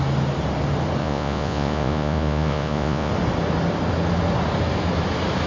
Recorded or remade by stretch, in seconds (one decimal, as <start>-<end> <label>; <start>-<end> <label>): 0.0-1.0 recorded; 1.0-3.1 remade; 3.1-5.5 recorded